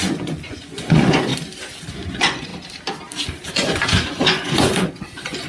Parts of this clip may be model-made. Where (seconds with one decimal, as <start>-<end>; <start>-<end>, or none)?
0.0-1.3; 1.9-2.5; 3.5-5.5